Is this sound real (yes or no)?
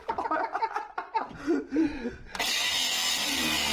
yes